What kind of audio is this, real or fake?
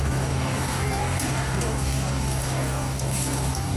fake